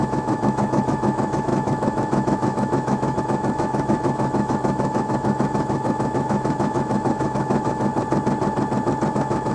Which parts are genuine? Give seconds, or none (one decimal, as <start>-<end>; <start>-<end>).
7.9-9.1

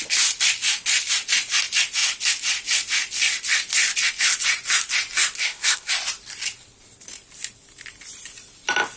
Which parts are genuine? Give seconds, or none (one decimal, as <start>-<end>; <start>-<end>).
0.0-5.4; 5.9-9.0

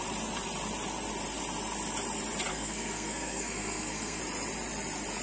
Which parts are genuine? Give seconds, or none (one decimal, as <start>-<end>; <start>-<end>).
0.0-2.5; 4.2-5.2